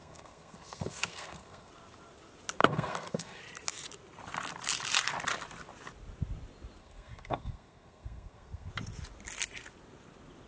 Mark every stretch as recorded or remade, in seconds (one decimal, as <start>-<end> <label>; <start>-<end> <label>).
0.0-1.7 remade; 1.7-2.6 recorded; 2.6-3.4 remade; 3.4-6.8 recorded; 6.8-8.7 remade; 8.7-10.5 recorded